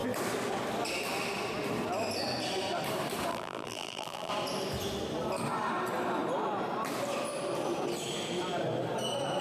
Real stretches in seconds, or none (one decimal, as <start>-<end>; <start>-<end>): 0.0-3.3; 4.3-9.4